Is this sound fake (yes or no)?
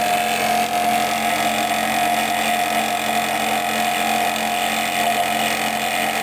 no